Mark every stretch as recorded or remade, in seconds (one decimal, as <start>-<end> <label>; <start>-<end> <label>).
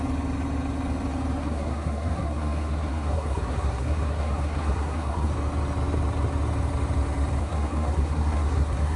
0.0-1.4 recorded; 1.4-5.3 remade; 5.3-7.4 recorded; 7.4-9.0 remade